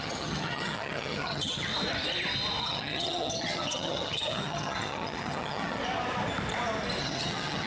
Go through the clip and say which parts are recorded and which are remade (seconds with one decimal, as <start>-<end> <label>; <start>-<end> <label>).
0.0-1.7 remade; 1.7-2.6 recorded; 2.6-5.8 remade; 5.8-7.0 recorded; 7.0-7.7 remade